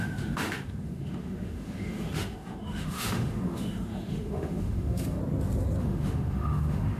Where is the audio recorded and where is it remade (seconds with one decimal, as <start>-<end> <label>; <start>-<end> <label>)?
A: 0.0-5.2 remade; 5.2-5.8 recorded; 5.8-7.0 remade